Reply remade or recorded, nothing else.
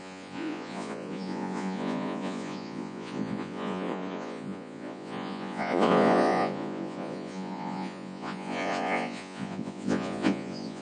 remade